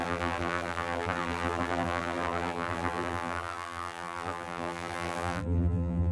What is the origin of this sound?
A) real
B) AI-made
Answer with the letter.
B